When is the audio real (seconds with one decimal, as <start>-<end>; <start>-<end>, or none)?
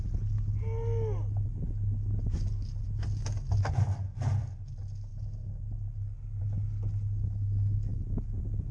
0.0-8.7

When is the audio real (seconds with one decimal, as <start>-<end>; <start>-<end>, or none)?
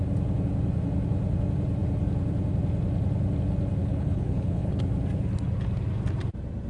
0.0-3.8; 4.8-6.7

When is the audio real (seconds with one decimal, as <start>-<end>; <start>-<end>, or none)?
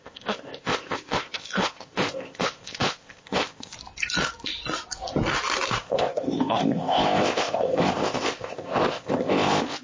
3.7-5.8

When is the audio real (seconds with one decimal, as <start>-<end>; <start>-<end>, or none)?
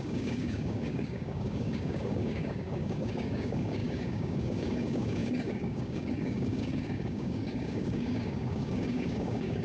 none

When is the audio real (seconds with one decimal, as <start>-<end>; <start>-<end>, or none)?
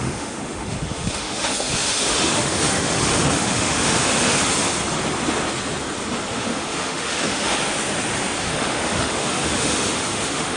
4.4-6.3; 7.6-8.4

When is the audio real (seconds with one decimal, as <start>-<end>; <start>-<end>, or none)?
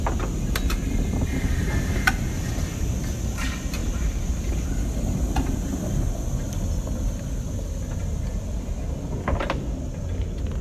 0.0-10.6